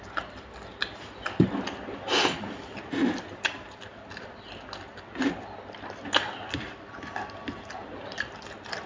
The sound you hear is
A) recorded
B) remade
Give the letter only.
A